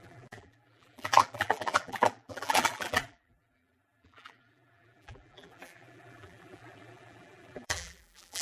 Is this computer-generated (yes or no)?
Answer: yes